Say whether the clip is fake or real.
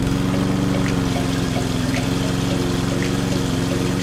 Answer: real